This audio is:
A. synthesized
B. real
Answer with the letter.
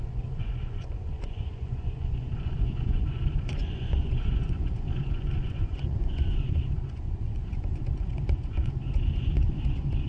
A